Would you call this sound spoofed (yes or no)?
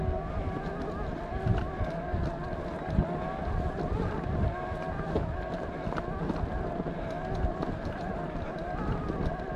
no